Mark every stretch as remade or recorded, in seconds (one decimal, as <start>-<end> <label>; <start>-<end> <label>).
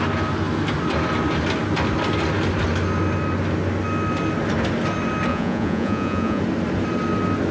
0.0-5.3 recorded; 5.3-6.4 remade; 6.4-7.5 recorded